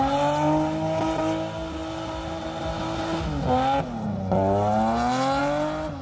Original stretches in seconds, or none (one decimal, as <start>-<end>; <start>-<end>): 0.0-6.0

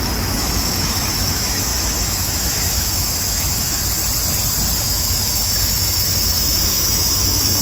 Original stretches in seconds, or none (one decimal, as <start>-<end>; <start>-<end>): 4.0-4.8

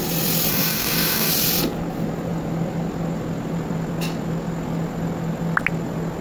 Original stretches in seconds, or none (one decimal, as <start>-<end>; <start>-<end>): 0.0-0.5; 1.3-6.2

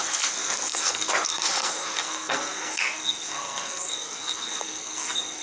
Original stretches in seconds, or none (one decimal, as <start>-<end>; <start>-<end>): none

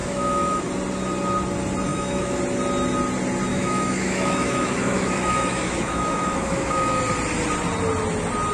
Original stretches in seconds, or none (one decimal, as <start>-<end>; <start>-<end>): 0.6-1.9; 2.4-3.5; 7.0-8.5